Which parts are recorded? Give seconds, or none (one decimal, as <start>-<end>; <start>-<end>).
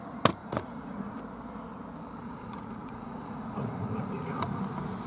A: 0.0-0.4; 1.2-2.2; 4.6-5.1